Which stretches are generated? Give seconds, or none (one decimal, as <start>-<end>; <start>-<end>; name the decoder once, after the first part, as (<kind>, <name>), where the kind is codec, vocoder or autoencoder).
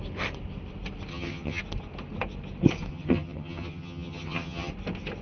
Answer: 1.1-1.6 (vocoder, HiFi-GAN); 2.9-4.7